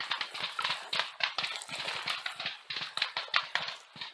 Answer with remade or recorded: recorded